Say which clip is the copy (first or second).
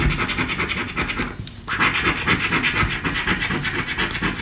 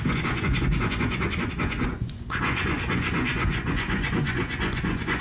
second